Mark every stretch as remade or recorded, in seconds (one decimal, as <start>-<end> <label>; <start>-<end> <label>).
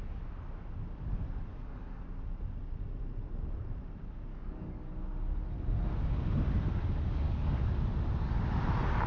0.0-1.5 recorded; 1.5-2.0 remade; 2.0-4.3 recorded; 4.3-4.9 remade; 4.9-7.1 recorded; 7.1-7.7 remade; 7.7-9.1 recorded